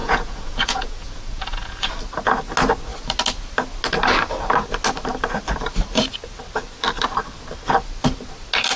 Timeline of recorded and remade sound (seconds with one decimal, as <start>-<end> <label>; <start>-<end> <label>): 0.0-1.9 remade; 1.9-8.8 recorded